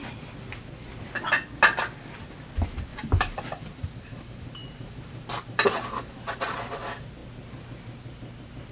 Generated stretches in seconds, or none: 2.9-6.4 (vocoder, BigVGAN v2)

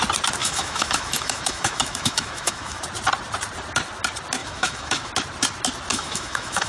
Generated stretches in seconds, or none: 0.4-2.8 (autoencoder, DAC-VAE); 4.4-5.1; 5.9-6.7

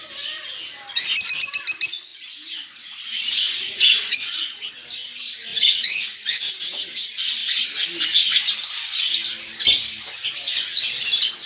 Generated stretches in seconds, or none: 2.1-4.7 (vocoder, Vocos); 5.5-6.8

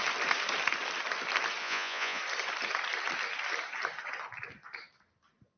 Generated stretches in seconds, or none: 1.6-2.2 (vocoder, Vocos)

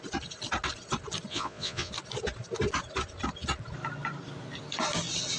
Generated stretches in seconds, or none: 1.3-1.9 (vocoder, Vocos)